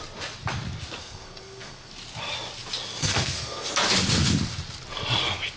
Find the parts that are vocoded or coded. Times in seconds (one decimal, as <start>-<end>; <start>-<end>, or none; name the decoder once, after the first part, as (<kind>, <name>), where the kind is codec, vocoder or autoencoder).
1.0-1.9 (codec, SNAC); 3.0-3.7